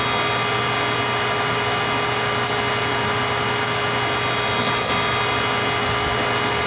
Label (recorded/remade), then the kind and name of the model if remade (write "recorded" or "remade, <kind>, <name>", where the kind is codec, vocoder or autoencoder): recorded